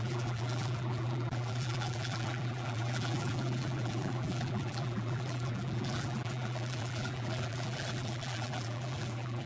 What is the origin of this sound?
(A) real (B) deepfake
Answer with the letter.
B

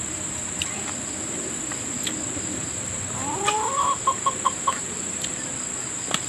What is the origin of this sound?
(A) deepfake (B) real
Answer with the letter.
A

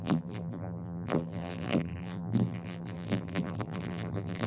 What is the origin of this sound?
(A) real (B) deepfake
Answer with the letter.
B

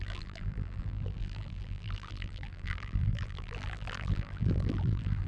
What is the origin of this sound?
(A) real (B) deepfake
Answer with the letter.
B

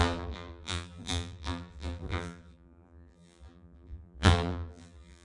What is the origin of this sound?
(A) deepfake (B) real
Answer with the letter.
A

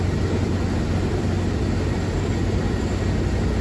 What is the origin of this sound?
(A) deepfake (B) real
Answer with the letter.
B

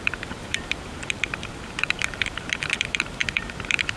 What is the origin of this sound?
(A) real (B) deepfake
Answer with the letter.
B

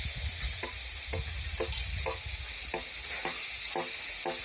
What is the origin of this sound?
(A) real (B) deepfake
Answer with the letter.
A